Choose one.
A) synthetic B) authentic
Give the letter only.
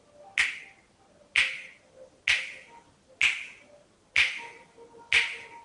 B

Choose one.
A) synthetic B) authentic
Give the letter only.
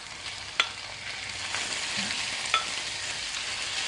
B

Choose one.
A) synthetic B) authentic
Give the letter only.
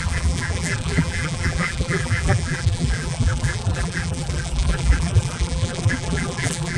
A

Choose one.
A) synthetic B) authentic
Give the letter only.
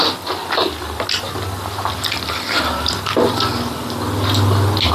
B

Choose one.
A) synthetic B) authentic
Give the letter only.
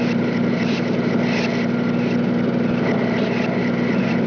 B